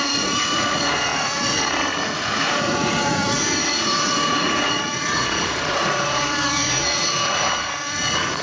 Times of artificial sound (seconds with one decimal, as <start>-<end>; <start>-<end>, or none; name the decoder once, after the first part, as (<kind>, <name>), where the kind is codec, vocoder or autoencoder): 0.0-8.4 (vocoder, Vocos)